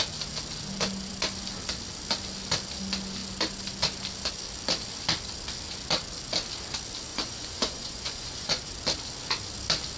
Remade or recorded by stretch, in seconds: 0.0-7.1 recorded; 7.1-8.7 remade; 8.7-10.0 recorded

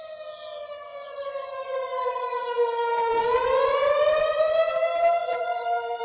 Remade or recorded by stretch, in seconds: 0.0-0.9 recorded; 0.9-3.1 remade; 3.1-5.2 recorded; 5.2-6.0 remade

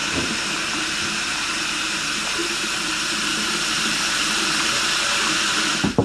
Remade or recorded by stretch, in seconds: 0.0-6.0 recorded

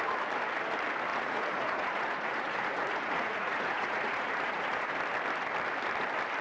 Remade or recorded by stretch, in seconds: 0.0-1.1 recorded; 1.1-4.9 remade; 4.9-6.4 recorded